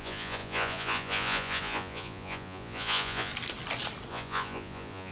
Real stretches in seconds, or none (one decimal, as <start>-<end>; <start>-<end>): 3.3-4.1